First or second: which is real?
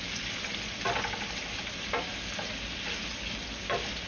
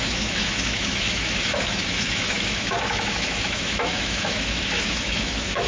first